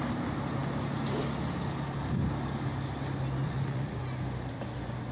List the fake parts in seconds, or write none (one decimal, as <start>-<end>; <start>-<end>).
3.4-4.0